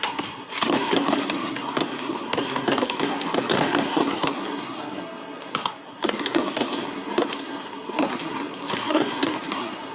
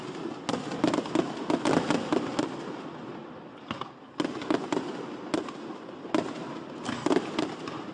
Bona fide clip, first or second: second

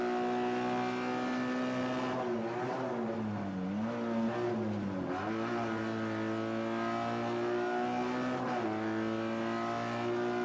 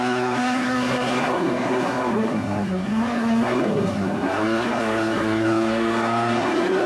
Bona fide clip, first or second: first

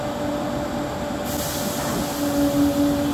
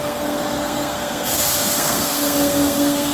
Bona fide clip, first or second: first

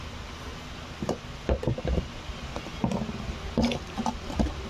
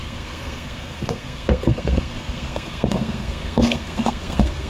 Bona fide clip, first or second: first